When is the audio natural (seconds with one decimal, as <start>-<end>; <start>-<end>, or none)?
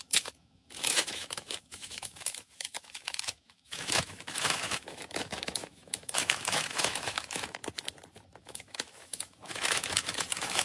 7.6-8.4